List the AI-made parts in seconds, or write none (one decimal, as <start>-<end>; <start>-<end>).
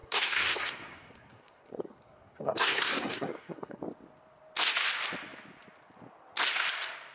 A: 0.0-3.8